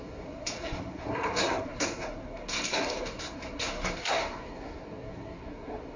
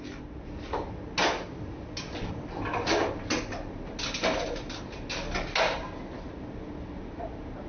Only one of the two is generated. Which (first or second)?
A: first